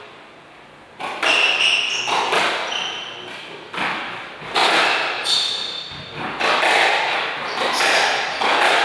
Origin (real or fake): real